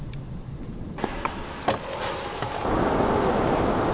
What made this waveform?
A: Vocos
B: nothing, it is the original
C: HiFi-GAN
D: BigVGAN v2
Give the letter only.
B